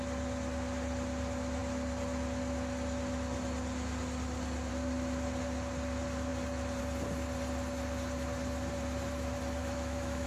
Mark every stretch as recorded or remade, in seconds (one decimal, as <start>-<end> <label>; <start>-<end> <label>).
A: 0.0-9.6 recorded; 9.6-10.3 remade